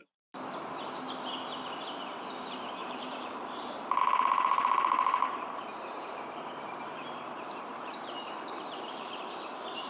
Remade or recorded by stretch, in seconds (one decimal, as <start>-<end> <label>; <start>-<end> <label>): 0.0-2.4 recorded; 2.4-9.9 remade